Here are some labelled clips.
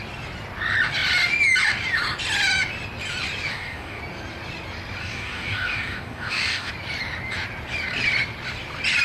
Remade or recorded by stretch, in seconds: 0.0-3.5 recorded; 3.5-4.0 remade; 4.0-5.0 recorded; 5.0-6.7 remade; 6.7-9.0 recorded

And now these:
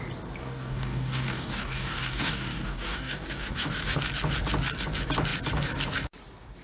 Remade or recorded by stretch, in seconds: 0.0-0.4 recorded; 0.4-4.0 remade; 4.0-6.6 recorded

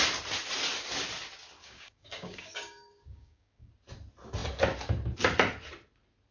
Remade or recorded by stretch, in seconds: 0.0-1.6 recorded; 1.6-3.7 remade; 3.7-6.3 recorded

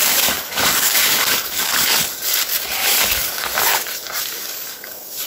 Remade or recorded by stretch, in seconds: 0.0-2.0 remade; 2.0-2.7 recorded; 2.7-3.5 remade; 3.5-4.2 recorded; 4.2-5.3 remade

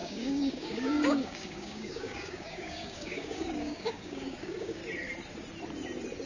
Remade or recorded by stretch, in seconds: 0.0-4.8 remade; 4.8-6.3 recorded

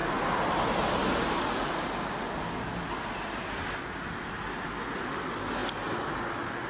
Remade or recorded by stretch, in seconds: 0.0-6.7 recorded

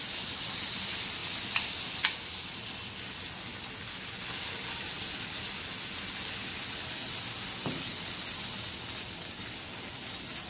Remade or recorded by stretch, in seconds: 0.0-10.5 recorded